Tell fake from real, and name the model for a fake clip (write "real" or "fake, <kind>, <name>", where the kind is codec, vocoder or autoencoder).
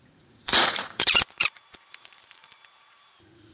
fake, vocoder, Vocos